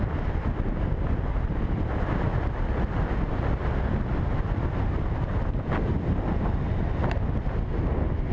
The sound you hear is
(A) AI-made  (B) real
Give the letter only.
B